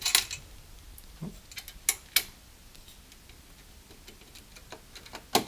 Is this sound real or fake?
real